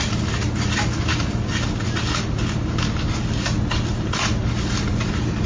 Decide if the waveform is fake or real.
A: real